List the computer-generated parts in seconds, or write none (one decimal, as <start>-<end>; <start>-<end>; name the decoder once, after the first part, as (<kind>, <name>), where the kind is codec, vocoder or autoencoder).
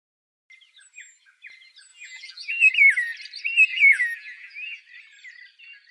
1.9-2.7 (vocoder, BigVGAN v2); 3.7-4.8